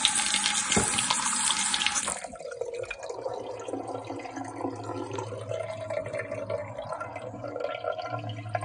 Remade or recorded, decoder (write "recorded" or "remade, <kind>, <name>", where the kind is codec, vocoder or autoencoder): recorded